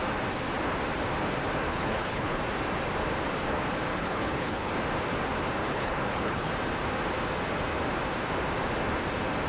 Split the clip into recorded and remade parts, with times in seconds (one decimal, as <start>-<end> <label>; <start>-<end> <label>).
0.0-1.7 recorded; 1.7-2.4 remade; 2.4-3.9 recorded; 3.9-4.7 remade; 4.7-5.6 recorded; 5.6-6.5 remade; 6.5-9.5 recorded

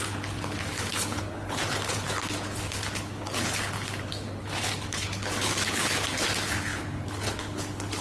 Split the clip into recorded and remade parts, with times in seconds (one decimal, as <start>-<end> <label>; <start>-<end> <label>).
0.0-8.0 remade

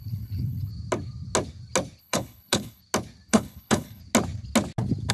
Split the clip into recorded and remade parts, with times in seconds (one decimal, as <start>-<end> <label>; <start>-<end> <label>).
0.0-0.7 remade; 0.7-2.0 recorded; 2.0-2.8 remade; 2.8-3.3 recorded; 3.3-4.0 remade; 4.0-5.1 recorded

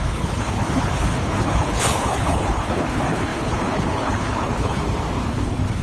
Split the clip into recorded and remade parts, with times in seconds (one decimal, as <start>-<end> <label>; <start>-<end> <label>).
0.0-4.8 remade; 4.8-5.3 recorded; 5.3-5.8 remade

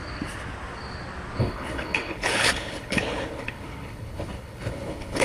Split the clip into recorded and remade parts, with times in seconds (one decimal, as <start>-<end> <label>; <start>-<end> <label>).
0.0-1.4 recorded; 1.4-5.2 remade

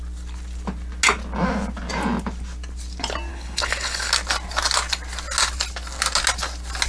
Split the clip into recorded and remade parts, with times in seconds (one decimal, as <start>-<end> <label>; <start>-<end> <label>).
0.0-3.3 recorded; 3.3-4.1 remade; 4.1-6.9 recorded

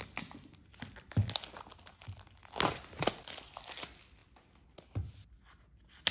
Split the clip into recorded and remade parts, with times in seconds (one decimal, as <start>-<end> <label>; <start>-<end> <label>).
0.0-6.1 recorded